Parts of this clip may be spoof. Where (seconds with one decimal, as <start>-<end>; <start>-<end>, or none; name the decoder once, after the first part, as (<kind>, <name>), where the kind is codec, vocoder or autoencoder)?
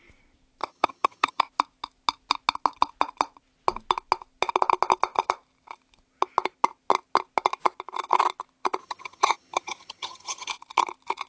0.6-1.4 (vocoder, HiFi-GAN); 8.8-10.5